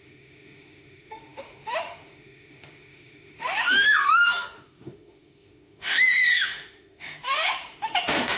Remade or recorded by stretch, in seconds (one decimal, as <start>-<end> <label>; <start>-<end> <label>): 0.0-8.4 remade